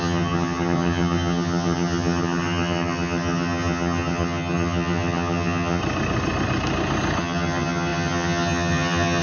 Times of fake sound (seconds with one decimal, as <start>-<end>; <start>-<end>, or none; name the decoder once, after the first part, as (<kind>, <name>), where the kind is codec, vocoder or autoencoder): 0.0-5.8 (vocoder, HiFi-GAN); 7.2-9.2